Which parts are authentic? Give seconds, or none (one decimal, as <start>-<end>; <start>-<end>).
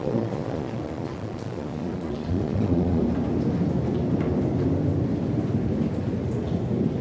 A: 3.0-7.0